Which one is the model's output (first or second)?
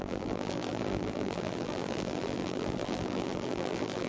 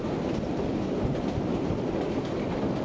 first